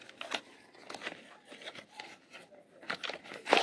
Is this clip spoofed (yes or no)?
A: no